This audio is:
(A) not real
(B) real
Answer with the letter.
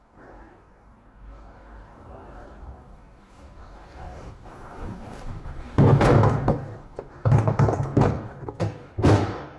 A